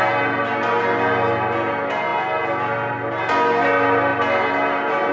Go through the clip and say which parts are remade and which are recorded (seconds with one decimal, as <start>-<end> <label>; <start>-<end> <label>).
0.0-5.1 recorded